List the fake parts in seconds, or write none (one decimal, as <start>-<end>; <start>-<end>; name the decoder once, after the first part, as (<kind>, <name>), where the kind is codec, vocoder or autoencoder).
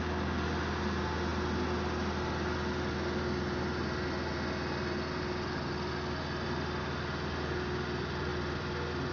8.3-9.1 (vocoder, BigVGAN v2)